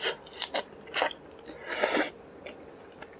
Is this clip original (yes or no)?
yes